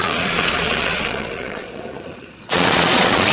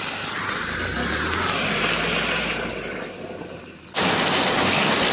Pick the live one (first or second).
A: second